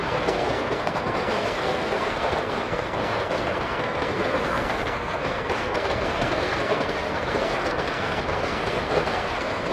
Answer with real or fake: fake